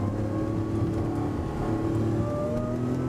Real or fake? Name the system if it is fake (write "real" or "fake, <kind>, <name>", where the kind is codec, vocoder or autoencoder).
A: real